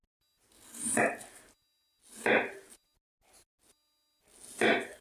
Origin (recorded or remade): recorded